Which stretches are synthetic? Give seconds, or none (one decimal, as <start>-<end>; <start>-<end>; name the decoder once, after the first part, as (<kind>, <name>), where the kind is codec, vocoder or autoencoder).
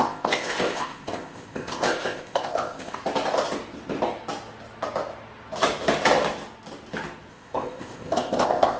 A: 0.0-3.0 (codec, ZipCodec); 7.3-8.8